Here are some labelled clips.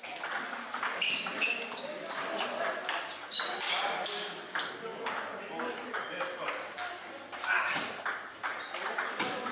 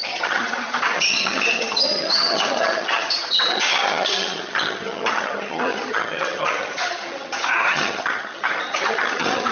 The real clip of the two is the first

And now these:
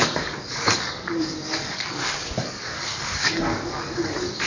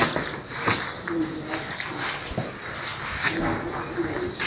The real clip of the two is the second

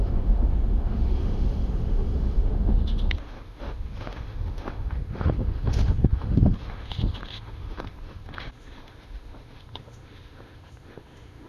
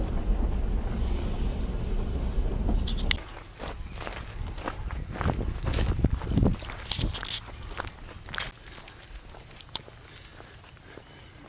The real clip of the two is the second